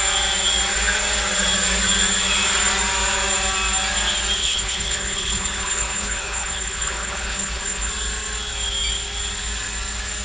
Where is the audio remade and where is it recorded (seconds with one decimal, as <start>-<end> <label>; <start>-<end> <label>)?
0.0-4.4 recorded; 4.4-7.9 remade; 7.9-10.2 recorded